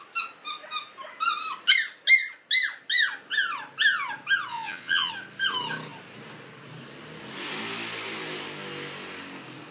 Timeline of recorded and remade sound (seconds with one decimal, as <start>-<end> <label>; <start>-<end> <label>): 0.0-4.5 recorded; 4.5-5.1 remade; 5.1-9.7 recorded